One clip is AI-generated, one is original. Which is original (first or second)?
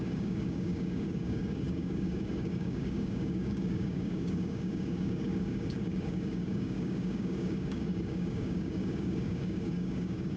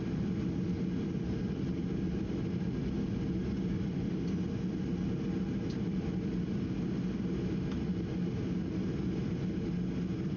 second